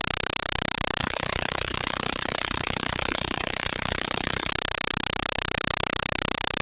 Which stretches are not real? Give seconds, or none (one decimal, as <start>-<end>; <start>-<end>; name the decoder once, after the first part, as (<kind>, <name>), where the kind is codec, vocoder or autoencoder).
1.0-4.5 (vocoder, Vocos)

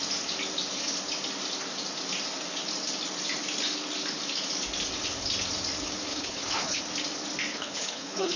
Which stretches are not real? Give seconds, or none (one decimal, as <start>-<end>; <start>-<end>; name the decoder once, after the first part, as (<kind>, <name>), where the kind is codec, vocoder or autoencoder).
6.1-6.8 (codec, HILCodec); 7.5-8.4

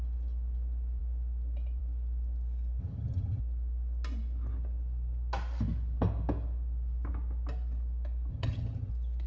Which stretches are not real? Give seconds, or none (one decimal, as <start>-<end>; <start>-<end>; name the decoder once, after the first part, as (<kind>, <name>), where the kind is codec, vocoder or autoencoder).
2.8-3.4 (vocoder, HiFi-GAN); 8.3-8.9

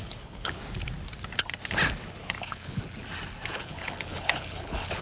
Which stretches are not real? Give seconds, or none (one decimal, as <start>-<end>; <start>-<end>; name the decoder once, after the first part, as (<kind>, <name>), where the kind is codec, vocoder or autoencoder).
0.0-0.6 (codec, HILCodec); 2.2-2.8; 3.5-5.0